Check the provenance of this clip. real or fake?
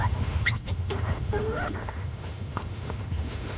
fake